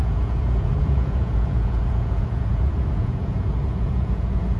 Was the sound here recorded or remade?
remade